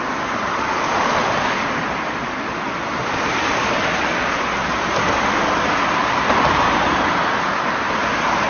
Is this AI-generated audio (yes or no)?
no